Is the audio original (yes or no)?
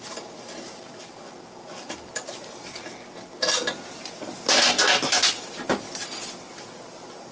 yes